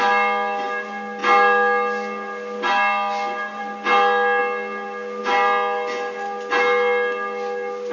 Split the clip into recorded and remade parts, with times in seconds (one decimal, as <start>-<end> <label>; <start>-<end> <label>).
0.0-7.9 recorded